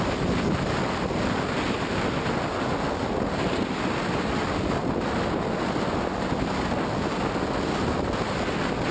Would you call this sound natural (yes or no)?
yes